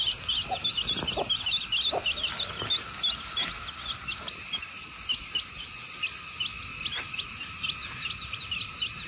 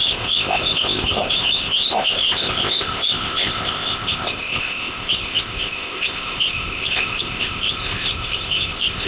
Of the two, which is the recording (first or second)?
first